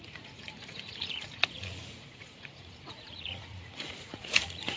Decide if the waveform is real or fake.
fake